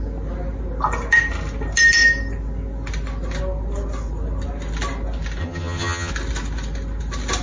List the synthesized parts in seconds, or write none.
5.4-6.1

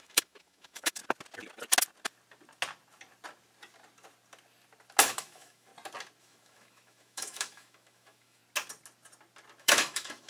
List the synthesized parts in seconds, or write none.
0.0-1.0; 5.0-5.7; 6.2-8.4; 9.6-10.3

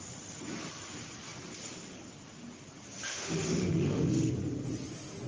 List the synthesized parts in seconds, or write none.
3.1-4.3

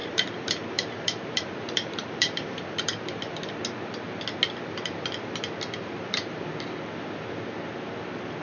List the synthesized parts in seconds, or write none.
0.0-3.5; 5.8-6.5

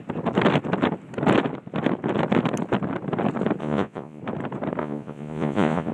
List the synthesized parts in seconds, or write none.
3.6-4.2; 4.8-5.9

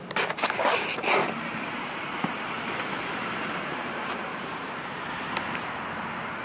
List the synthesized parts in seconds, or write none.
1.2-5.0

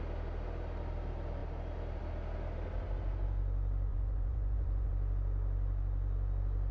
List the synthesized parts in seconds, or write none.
3.9-4.9